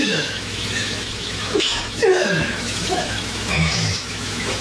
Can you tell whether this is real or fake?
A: fake